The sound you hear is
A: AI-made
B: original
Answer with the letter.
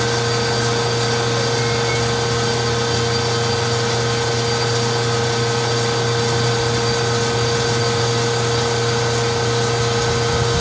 B